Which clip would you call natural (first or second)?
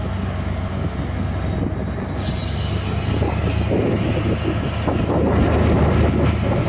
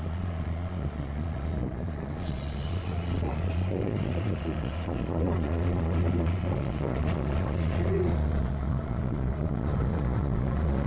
first